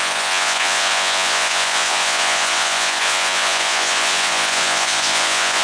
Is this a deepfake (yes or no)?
yes